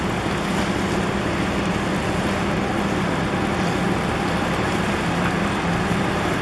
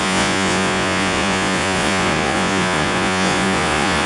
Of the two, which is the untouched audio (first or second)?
first